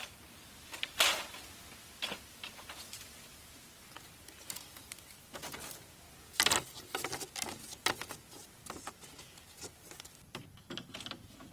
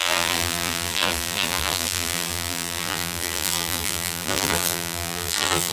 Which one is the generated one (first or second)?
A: second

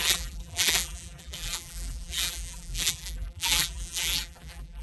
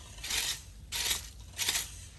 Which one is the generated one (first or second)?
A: first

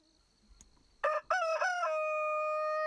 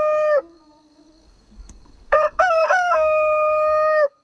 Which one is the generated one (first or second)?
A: second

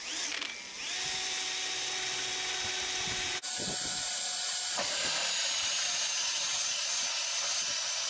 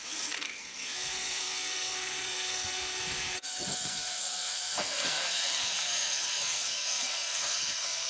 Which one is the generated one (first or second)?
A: second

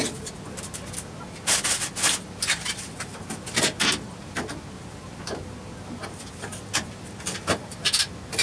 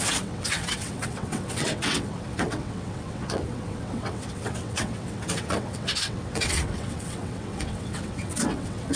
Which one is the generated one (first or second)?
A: second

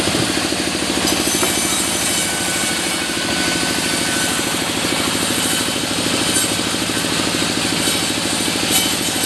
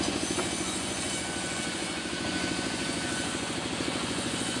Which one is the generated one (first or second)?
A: second